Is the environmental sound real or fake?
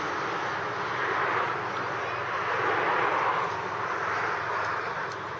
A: real